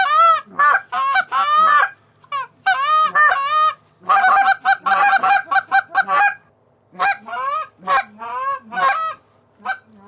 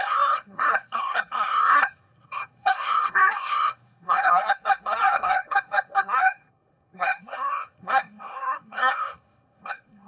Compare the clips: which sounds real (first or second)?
first